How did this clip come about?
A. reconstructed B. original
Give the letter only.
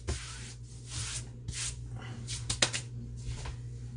B